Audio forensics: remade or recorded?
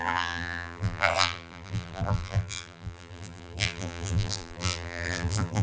remade